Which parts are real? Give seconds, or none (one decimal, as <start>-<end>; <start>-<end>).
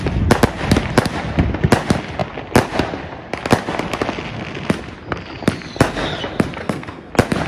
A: 0.0-6.6; 7.1-7.5